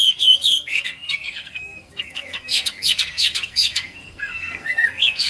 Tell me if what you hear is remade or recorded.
remade